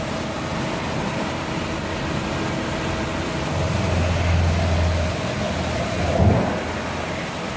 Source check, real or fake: real